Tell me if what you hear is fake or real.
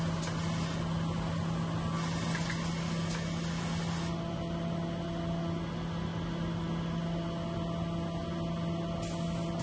real